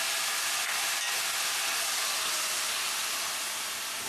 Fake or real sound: real